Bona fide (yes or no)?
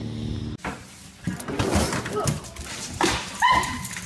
no